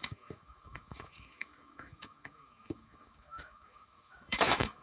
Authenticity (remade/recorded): remade